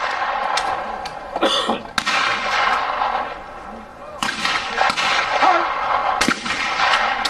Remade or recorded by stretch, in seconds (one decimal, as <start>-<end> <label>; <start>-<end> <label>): 0.0-2.3 recorded; 2.3-2.8 remade; 2.8-3.9 recorded; 3.9-5.4 remade; 5.4-7.3 recorded